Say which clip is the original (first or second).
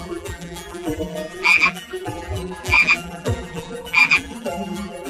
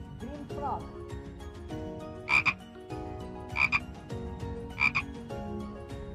second